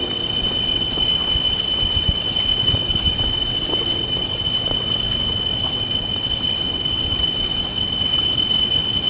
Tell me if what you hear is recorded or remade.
remade